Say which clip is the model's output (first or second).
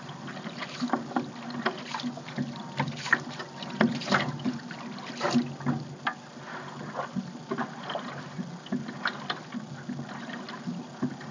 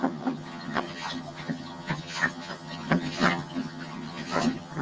second